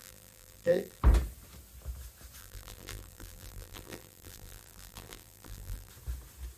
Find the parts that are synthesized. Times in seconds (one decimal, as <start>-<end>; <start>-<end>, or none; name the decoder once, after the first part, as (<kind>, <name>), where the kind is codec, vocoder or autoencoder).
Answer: 0.0-1.0 (vocoder, BigVGAN v2); 2.4-5.9